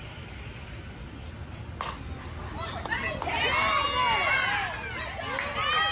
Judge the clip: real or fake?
real